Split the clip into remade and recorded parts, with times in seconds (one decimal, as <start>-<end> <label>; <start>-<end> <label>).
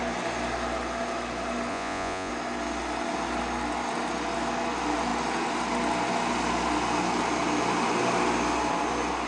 0.0-1.7 recorded; 1.7-2.3 remade; 2.3-9.3 recorded